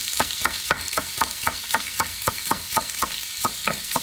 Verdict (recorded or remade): remade